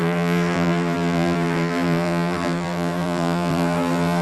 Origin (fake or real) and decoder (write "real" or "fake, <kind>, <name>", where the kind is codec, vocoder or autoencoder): fake, vocoder, BigVGAN v2